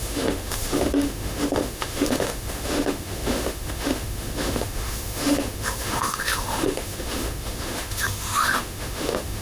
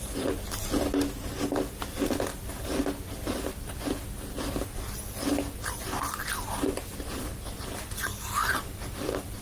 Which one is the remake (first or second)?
first